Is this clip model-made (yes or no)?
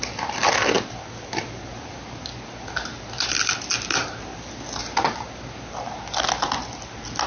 no